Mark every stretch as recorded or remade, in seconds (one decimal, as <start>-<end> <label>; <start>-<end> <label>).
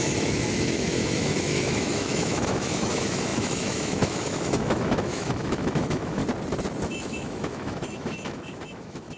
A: 0.0-6.2 remade; 6.2-6.9 recorded; 6.9-9.2 remade